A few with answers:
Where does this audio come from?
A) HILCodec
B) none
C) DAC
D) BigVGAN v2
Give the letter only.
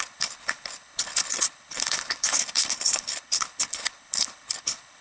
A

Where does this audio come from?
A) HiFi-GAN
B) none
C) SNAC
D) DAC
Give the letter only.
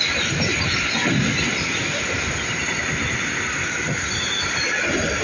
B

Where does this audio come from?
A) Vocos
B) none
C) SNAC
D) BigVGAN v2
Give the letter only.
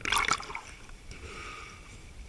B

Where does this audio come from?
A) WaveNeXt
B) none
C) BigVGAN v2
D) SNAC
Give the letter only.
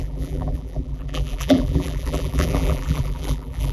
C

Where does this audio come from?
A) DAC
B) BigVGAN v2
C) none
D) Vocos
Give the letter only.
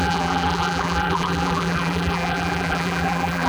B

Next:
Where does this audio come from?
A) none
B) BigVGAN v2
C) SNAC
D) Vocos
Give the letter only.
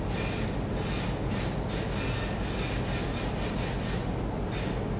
A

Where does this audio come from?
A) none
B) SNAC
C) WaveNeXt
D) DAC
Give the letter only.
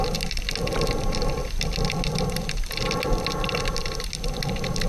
A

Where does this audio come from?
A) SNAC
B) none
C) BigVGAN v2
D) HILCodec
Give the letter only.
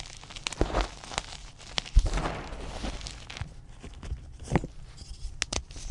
B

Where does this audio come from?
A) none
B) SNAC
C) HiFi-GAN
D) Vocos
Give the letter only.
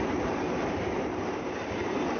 A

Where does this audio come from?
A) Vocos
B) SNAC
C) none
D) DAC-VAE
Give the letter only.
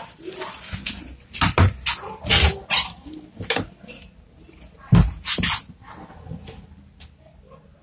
C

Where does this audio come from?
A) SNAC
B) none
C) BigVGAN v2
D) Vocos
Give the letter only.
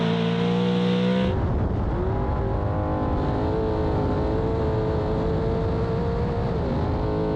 B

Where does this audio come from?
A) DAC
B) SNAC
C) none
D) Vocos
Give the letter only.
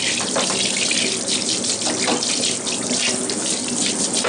C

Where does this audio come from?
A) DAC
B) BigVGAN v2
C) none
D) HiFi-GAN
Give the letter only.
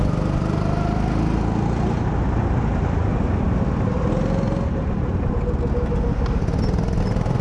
C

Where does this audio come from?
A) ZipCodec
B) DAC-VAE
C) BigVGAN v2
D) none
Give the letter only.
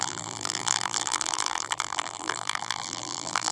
C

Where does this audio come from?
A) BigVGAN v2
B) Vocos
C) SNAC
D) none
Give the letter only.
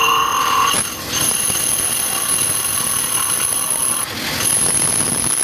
D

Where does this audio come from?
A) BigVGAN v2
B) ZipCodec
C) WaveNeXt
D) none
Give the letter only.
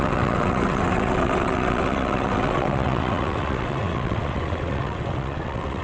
C